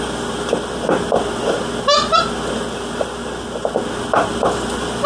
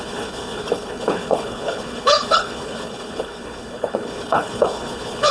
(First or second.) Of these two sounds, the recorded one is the first